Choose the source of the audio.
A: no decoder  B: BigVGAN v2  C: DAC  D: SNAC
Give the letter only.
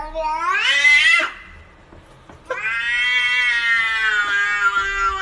A